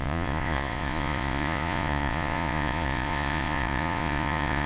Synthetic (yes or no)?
yes